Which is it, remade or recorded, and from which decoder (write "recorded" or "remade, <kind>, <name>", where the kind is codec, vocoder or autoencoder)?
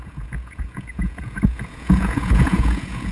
remade, vocoder, Vocos